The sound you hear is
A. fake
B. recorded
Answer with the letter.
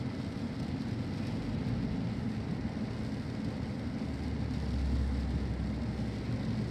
B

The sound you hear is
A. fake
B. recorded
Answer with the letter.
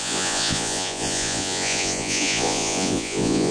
A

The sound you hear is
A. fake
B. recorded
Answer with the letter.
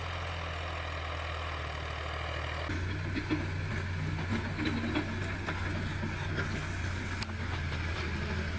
B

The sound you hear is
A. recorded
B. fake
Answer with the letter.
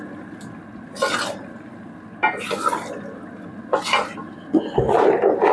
A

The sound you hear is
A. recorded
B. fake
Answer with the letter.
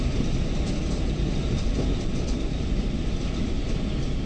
A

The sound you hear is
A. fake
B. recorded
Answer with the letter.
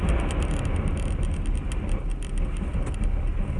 B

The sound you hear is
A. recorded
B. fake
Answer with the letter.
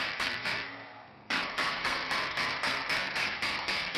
B